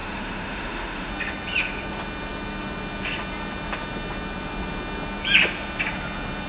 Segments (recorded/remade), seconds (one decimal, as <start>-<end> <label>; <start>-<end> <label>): 0.0-1.1 remade; 1.1-6.5 recorded